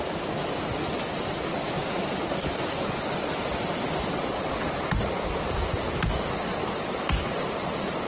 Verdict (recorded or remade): recorded